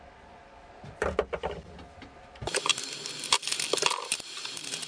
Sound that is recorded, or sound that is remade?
recorded